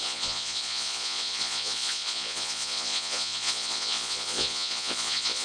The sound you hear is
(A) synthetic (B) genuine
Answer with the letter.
A